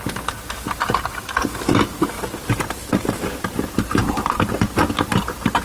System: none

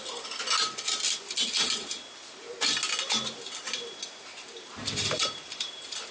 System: none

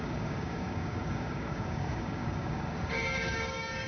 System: codec, DAC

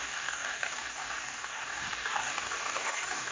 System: codec, DAC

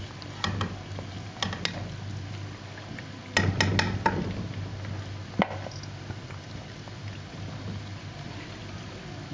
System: none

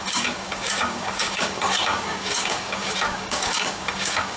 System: codec, DAC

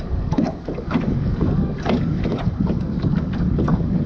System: codec, DAC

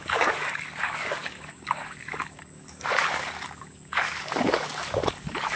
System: codec, DAC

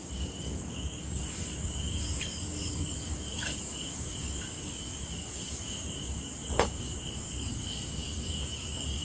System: codec, DAC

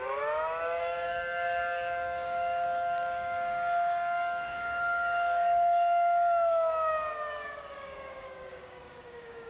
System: codec, DAC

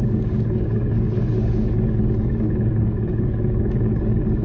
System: codec, DAC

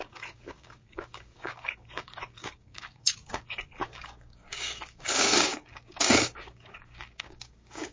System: codec, DAC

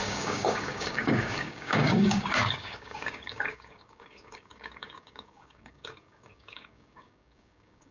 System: codec, DAC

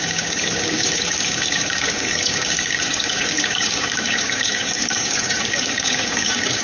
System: codec, DAC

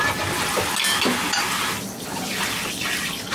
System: none